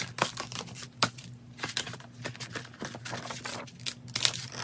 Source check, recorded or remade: recorded